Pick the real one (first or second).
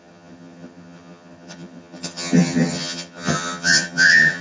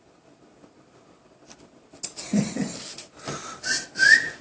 second